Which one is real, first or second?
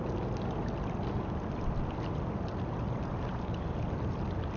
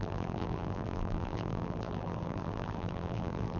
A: first